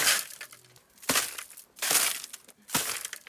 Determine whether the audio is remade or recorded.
recorded